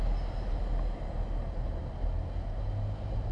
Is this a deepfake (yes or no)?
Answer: no